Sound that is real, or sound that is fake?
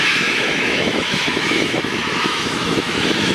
fake